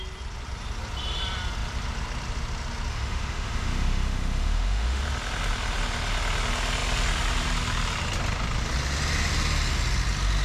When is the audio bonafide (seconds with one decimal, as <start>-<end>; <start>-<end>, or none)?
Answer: 0.0-2.9; 5.0-10.4